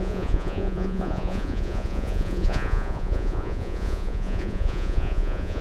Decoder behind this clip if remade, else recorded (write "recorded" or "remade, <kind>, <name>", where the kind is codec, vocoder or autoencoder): remade, vocoder, Vocos